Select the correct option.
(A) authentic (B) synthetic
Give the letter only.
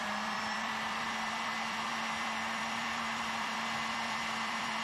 B